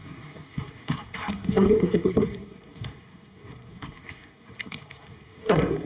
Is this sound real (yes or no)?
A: no